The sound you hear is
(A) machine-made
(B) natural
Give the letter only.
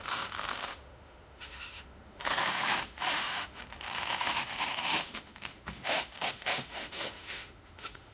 A